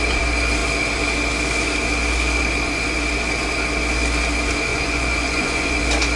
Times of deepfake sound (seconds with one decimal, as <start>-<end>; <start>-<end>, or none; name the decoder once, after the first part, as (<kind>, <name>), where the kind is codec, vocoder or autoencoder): 4.7-5.8 (vocoder, Vocos)